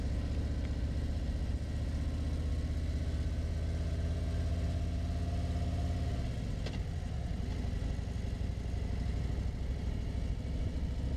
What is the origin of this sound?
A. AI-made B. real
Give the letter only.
B